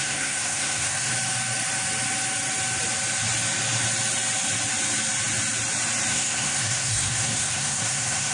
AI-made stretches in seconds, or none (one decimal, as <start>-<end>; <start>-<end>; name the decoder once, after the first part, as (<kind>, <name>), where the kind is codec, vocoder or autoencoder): 0.0-1.1 (codec, SNAC); 6.1-8.3